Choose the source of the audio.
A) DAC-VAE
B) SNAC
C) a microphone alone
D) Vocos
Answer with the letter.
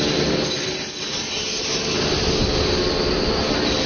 C